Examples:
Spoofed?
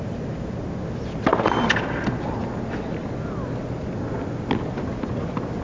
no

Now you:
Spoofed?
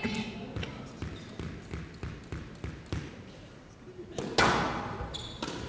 no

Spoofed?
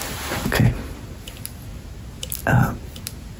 no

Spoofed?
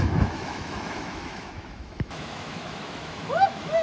yes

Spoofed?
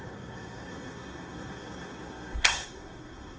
yes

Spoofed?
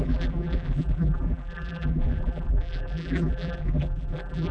yes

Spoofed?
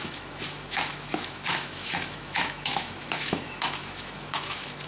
yes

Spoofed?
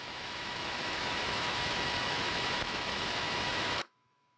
yes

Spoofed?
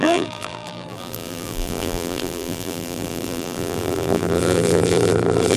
yes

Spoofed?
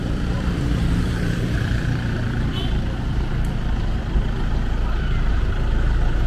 yes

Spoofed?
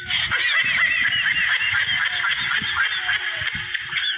no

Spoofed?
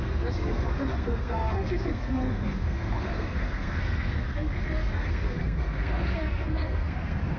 yes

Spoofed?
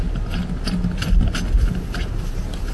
no